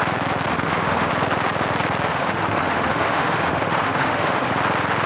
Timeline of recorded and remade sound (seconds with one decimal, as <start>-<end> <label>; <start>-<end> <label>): 0.0-0.5 recorded; 0.5-1.1 remade; 1.1-2.1 recorded; 2.1-4.5 remade; 4.5-5.1 recorded